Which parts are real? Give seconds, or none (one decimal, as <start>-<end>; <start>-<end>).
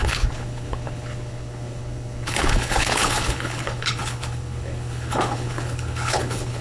none